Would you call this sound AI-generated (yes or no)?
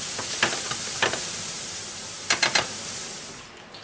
no